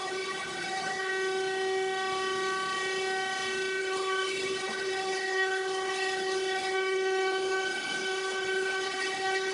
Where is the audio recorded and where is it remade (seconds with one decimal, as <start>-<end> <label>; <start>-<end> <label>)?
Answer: 0.0-1.1 remade; 1.1-3.8 recorded; 3.8-9.5 remade